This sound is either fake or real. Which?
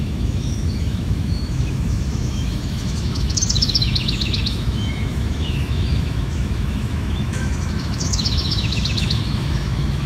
fake